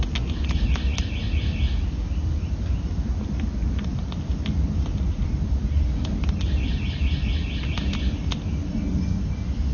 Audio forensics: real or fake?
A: real